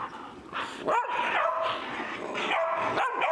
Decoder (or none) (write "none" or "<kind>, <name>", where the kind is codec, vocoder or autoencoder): none